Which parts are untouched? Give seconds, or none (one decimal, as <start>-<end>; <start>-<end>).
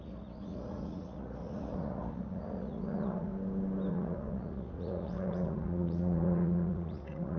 3.3-3.9